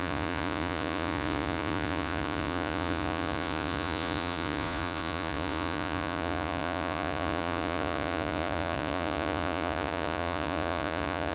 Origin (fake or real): fake